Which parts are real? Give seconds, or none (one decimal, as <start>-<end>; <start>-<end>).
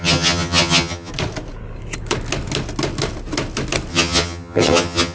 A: 1.1-3.9